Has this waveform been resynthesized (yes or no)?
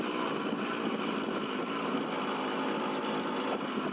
no